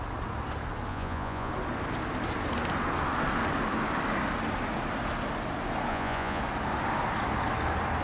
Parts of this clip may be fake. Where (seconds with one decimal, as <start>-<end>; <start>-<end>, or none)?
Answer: 0.9-1.5; 5.9-6.4